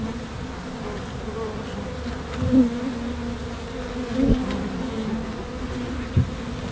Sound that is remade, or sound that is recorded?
recorded